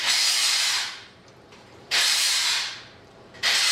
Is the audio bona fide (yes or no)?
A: no